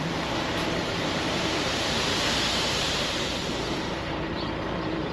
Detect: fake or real fake